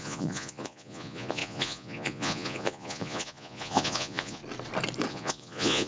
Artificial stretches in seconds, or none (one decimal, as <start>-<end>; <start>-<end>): 0.0-4.4; 5.1-5.9